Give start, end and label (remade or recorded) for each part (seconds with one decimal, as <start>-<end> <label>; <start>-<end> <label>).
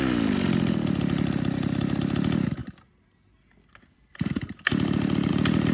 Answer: 0.0-5.7 recorded